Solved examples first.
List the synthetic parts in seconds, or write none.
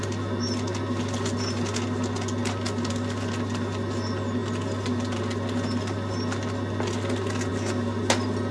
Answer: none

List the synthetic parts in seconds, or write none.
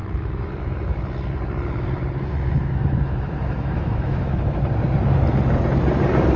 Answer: 0.0-1.0 (autoencoder, DAC-VAE); 2.3-4.6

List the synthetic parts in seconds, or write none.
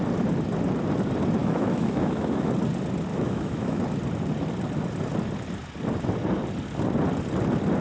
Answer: 1.4-2.5 (autoencoder, DAC-VAE); 3.1-3.8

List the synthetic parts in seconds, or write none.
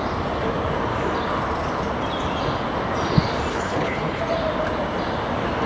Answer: 3.5-4.2 (codec, HILCodec)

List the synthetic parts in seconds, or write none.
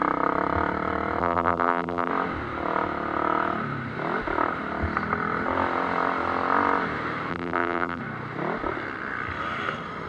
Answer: 1.2-2.1 (vocoder, BigVGAN v2); 7.3-8.0